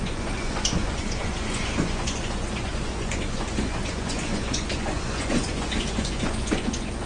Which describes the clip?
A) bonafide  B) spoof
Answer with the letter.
B